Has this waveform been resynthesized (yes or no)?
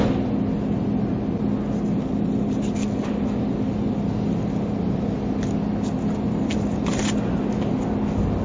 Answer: no